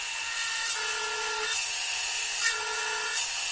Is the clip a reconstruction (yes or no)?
yes